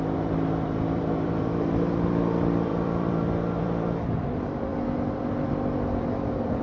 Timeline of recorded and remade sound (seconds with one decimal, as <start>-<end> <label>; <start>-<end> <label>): 0.0-4.7 remade; 4.7-5.2 recorded; 5.2-6.6 remade